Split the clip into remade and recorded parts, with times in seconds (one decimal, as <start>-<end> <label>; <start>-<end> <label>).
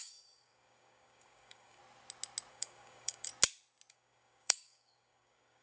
0.0-1.8 remade; 1.8-2.5 recorded; 2.5-3.3 remade; 3.3-3.9 recorded; 3.9-5.6 remade